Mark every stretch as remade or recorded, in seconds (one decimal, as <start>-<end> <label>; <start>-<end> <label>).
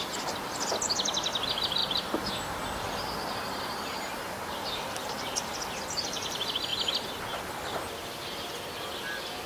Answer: 0.0-9.5 recorded